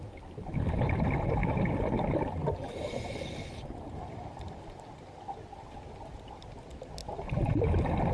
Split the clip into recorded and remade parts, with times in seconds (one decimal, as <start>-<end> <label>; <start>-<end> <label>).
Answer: 0.0-7.0 recorded; 7.0-8.1 remade